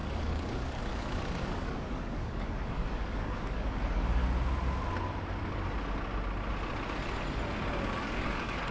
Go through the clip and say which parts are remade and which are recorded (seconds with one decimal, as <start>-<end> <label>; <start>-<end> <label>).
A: 0.0-4.2 remade; 4.2-7.9 recorded; 7.9-8.7 remade